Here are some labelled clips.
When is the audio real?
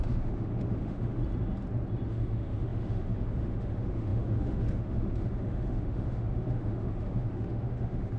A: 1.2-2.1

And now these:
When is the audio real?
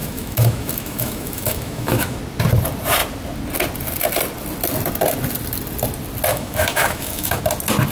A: 2.2-6.3; 7.4-7.9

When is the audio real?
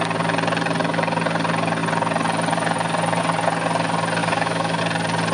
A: 0.0-4.2; 4.8-5.3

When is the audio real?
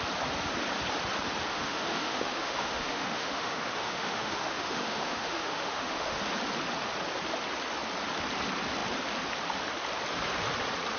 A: 0.0-1.5; 6.2-11.0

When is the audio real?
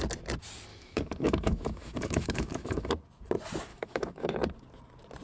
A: 0.0-0.7; 2.9-3.7; 4.4-5.2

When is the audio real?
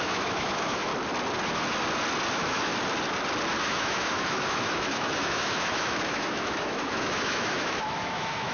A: 0.9-2.3; 2.7-3.6